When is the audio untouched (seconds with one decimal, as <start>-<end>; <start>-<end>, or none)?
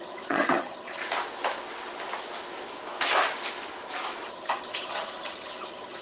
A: 1.0-4.3